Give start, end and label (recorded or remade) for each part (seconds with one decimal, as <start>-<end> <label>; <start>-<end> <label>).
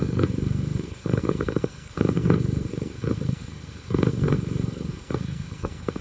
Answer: 0.0-6.0 remade